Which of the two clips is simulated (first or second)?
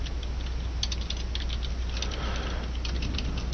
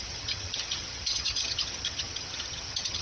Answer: second